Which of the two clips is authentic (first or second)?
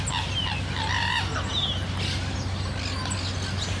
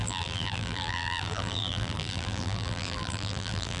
first